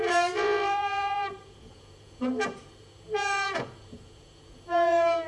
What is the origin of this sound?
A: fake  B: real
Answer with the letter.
A